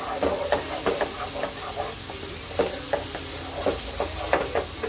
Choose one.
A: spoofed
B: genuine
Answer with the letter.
B